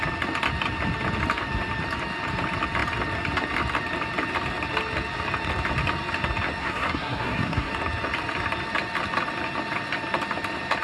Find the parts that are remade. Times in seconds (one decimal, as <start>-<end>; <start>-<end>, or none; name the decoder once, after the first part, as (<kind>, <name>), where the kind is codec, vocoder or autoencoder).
6.6-7.7 (codec, SNAC)